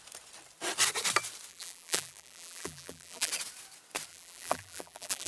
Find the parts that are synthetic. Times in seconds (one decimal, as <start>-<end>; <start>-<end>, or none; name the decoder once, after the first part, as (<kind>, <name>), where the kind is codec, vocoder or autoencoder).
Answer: 1.5-3.3 (vocoder, BigVGAN v2); 4.1-5.3